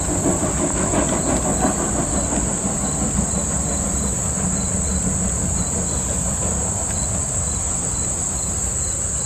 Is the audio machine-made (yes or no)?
no